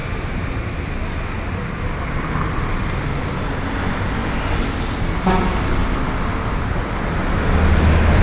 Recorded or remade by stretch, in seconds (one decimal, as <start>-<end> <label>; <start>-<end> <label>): 0.0-8.2 recorded